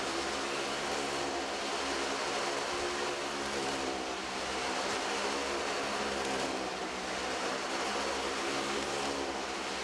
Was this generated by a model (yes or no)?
no